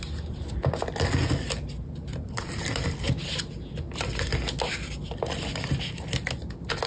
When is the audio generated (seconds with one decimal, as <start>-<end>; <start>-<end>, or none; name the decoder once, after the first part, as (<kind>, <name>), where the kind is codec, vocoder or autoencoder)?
2.0-2.6 (vocoder, BigVGAN v2)